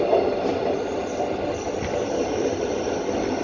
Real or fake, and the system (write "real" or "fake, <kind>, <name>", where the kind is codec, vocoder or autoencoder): real